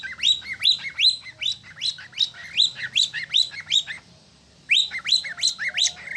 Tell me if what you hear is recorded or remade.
recorded